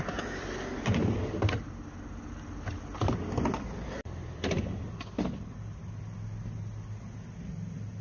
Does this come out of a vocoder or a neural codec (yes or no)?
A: no